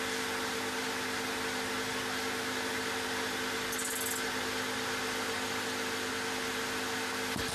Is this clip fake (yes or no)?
no